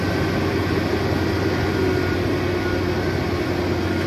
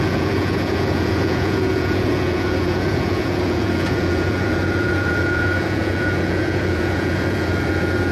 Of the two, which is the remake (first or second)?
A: second